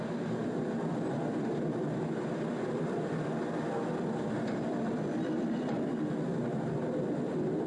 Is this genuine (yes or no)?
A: no